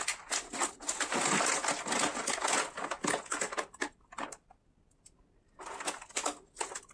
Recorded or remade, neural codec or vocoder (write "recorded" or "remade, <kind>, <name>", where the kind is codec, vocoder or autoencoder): recorded